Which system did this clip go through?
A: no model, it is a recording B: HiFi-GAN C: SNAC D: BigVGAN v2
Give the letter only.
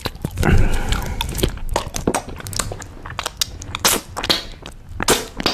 A